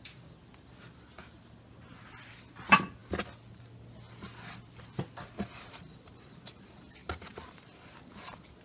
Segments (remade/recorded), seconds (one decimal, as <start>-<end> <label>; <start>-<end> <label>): 0.0-8.6 recorded